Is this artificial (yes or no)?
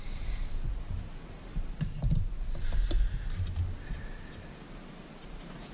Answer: yes